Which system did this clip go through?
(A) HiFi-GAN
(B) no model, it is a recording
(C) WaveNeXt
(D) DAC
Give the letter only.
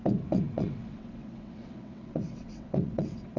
C